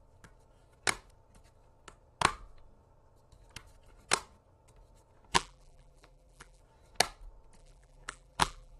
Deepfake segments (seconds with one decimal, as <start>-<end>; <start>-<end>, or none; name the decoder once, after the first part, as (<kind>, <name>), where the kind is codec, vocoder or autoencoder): 5.3-6.6 (vocoder, BigVGAN v2); 7.6-8.8